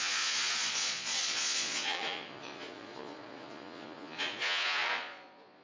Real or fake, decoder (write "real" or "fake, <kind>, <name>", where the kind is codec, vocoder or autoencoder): fake, vocoder, Vocos